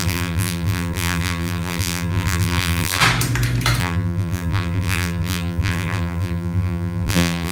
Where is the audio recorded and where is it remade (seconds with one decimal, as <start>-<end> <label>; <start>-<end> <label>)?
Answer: 0.0-3.0 remade; 3.0-3.8 recorded; 3.8-7.5 remade